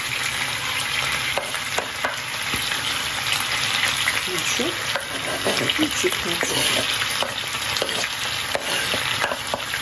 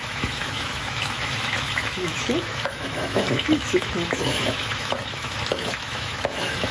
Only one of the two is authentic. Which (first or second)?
first